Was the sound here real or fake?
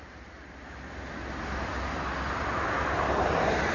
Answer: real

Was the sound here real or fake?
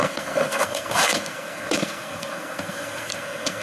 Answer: fake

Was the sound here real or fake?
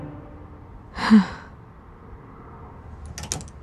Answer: real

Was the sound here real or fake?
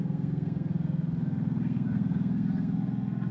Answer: fake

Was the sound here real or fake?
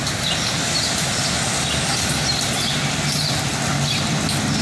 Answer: real